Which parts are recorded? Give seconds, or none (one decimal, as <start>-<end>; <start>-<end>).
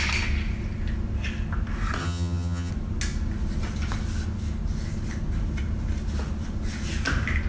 0.0-2.0; 2.7-7.5